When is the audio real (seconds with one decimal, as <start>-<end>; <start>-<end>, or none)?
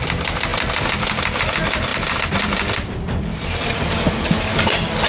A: 0.0-0.5; 1.4-1.9; 3.2-5.1